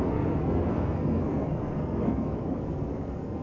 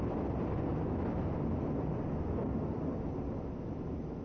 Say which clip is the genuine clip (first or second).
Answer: second